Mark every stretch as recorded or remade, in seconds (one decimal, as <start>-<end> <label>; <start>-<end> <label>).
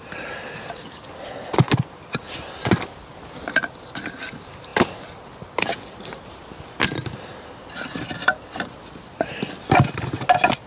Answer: 0.0-10.7 recorded